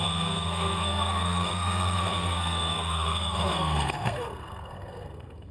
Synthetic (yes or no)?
yes